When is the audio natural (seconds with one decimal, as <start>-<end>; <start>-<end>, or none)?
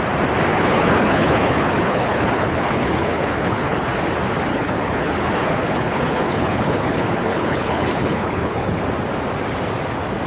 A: 0.0-0.5; 4.0-4.5; 8.8-10.3